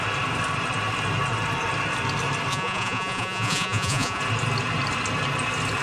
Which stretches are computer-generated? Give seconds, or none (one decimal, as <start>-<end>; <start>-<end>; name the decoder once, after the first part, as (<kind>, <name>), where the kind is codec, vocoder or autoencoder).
2.5-4.2 (vocoder, Vocos)